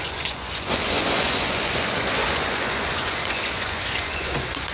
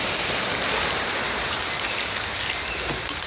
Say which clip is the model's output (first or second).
first